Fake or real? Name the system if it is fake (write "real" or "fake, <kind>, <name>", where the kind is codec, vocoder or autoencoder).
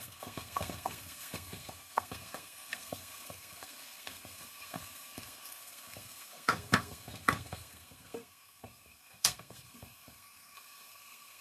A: fake, codec, SNAC